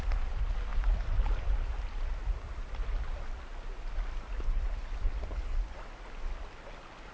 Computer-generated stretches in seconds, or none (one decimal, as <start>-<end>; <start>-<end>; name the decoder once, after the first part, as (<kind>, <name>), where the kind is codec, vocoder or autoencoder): none